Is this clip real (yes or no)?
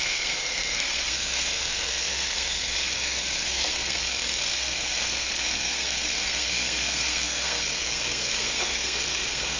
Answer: no